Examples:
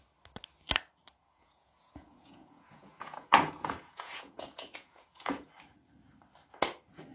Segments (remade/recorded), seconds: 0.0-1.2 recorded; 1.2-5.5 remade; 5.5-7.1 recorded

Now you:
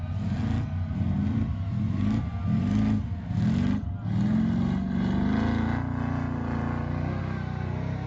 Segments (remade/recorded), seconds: 0.0-8.1 recorded